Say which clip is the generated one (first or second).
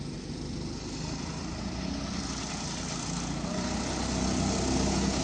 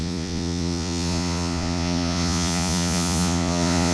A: second